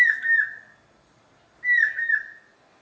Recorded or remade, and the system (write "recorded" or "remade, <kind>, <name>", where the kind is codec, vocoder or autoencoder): recorded